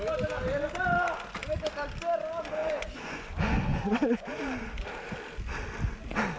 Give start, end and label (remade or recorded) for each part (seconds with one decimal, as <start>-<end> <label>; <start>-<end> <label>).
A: 0.0-2.6 recorded; 2.6-4.4 remade; 4.4-6.4 recorded